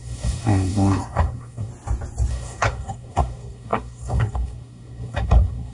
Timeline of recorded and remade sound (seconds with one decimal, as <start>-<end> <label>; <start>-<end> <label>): 0.0-1.7 remade; 1.7-2.3 recorded; 2.3-5.7 remade